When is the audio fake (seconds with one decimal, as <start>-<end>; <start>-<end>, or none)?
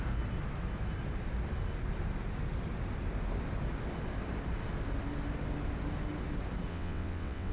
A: 6.7-7.5